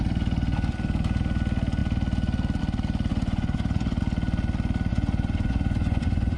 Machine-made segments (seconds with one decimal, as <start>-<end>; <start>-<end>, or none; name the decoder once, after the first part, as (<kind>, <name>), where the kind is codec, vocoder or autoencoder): 3.1-4.0 (vocoder, Vocos); 4.9-6.4